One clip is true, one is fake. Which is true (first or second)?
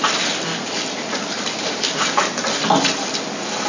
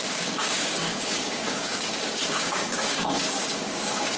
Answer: first